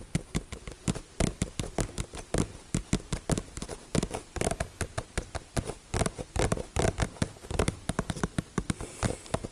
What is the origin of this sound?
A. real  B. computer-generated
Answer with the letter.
A